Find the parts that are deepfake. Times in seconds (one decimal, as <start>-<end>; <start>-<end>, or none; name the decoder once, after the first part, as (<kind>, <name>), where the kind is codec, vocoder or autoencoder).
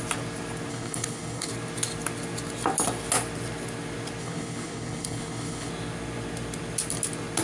0.7-1.5 (codec, HILCodec); 4.2-5.7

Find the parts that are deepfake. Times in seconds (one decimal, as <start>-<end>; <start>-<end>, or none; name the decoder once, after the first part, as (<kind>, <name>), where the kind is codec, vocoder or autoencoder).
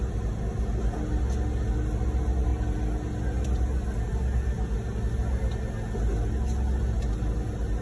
none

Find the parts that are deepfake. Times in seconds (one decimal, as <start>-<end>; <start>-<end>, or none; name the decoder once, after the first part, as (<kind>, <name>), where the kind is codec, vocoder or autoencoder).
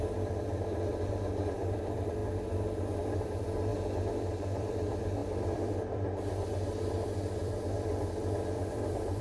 0.0-2.2 (vocoder, BigVGAN v2); 3.2-3.7; 4.3-9.2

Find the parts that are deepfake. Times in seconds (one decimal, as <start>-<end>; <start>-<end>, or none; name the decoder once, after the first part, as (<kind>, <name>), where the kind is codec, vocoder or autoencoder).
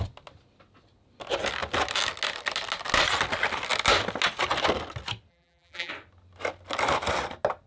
5.3-5.9 (vocoder, BigVGAN v2)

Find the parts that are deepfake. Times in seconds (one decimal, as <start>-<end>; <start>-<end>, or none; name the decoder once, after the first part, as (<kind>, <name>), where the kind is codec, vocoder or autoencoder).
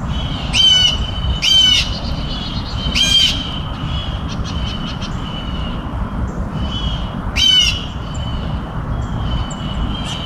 0.0-4.0 (vocoder, BigVGAN v2); 6.3-8.3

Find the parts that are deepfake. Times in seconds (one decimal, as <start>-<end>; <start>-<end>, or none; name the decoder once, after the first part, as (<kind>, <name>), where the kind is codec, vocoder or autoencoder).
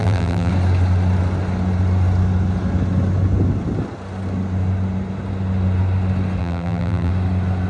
0.0-0.5 (vocoder, BigVGAN v2); 6.4-7.1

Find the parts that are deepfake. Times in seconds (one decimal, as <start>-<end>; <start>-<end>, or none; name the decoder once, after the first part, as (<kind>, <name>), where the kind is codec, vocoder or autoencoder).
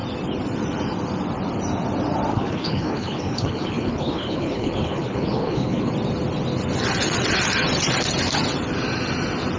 2.3-5.9 (codec, HILCodec)